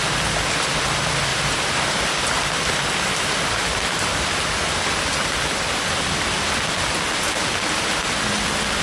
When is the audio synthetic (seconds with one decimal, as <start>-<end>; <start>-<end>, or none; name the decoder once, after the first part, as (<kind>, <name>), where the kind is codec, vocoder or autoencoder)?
1.3-2.5 (vocoder, BigVGAN v2)